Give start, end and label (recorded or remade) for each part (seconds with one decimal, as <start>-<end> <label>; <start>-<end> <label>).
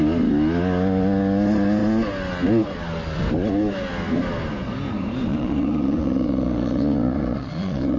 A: 0.0-5.3 recorded; 5.3-8.0 remade